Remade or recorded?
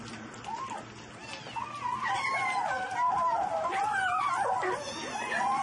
recorded